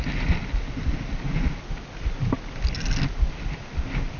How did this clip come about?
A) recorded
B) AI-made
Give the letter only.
A